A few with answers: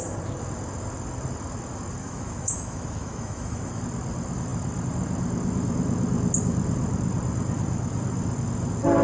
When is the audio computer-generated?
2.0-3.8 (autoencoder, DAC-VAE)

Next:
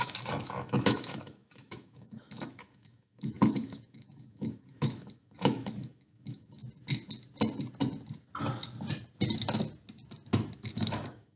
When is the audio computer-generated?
0.0-6.6 (autoencoder, DAC-VAE); 10.7-11.4

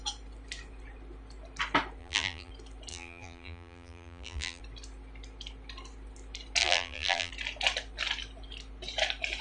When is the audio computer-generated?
2.0-2.5 (vocoder, BigVGAN v2); 2.9-4.6; 6.6-7.3

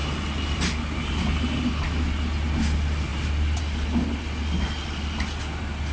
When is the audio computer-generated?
none